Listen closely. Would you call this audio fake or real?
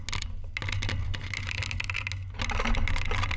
real